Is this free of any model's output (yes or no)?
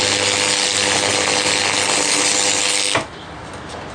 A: yes